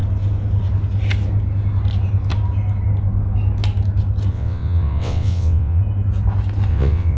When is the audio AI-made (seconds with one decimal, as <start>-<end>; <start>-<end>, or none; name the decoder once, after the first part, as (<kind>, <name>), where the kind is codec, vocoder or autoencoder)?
4.3-5.8 (vocoder, WaveNeXt); 6.7-7.2